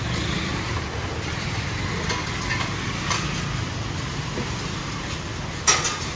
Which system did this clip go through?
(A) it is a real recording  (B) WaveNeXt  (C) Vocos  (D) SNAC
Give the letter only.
A